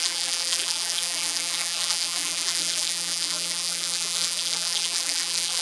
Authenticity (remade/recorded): remade